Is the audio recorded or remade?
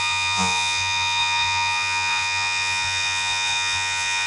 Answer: remade